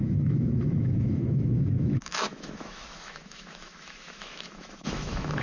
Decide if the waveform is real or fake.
fake